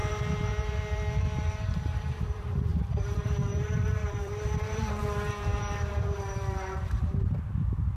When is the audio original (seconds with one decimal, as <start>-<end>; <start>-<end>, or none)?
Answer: none